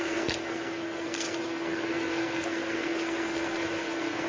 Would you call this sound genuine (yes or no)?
no